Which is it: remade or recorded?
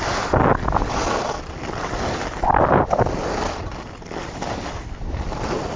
recorded